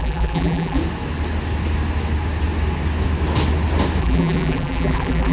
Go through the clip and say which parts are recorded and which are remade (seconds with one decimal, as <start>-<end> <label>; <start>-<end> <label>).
0.0-0.8 remade; 0.8-4.0 recorded; 4.0-5.3 remade

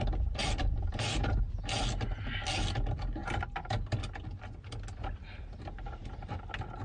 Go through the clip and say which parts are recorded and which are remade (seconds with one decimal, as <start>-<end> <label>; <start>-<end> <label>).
0.0-0.4 recorded; 0.4-1.6 remade; 1.6-6.8 recorded

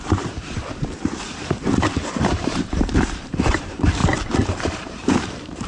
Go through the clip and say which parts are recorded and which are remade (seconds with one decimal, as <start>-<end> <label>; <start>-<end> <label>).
0.0-4.0 remade; 4.0-4.6 recorded; 4.6-5.7 remade